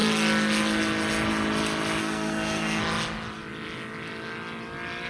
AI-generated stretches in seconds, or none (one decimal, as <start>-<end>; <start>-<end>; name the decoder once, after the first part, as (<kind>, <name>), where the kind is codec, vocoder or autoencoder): 2.0-2.8 (codec, SNAC)